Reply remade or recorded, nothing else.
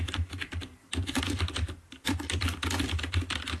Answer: recorded